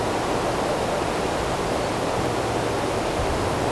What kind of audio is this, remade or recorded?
recorded